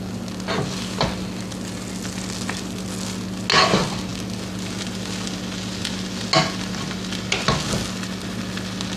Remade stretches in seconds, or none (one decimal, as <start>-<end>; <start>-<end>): none